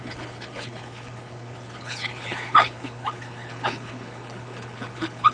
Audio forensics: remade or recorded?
remade